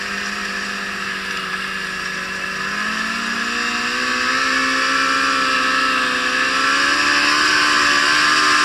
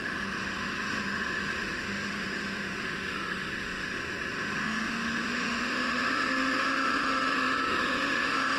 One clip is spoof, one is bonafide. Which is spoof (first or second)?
second